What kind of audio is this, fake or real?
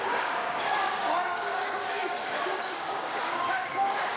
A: fake